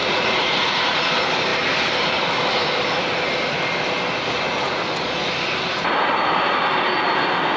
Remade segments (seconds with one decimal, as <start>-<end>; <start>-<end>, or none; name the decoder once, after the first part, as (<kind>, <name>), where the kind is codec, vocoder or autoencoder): 0.0-1.1 (vocoder, Vocos)